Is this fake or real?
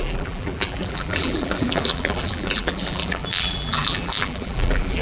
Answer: fake